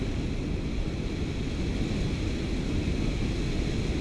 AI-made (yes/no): no